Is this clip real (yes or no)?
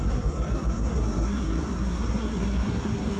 no